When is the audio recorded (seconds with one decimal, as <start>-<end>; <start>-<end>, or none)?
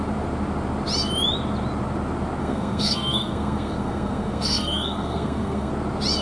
0.0-2.4; 5.7-6.2